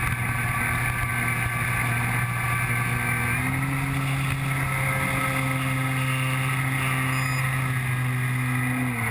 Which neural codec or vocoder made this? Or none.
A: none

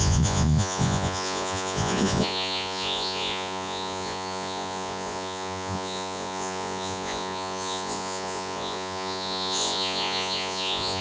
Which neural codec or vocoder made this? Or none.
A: vocoder, Vocos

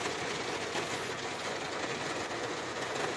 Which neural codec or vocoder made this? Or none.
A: vocoder, Vocos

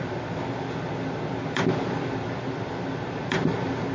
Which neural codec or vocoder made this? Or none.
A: vocoder, BigVGAN v2